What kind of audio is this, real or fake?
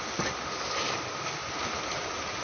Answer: real